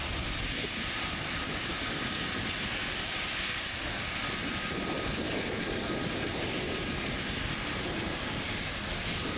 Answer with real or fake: real